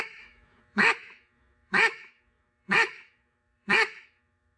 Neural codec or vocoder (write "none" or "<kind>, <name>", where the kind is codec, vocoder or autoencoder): autoencoder, DAC-VAE